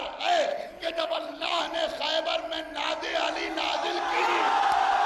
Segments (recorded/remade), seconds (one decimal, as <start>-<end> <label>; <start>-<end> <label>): 0.0-0.5 recorded; 0.5-1.6 remade; 1.6-5.1 recorded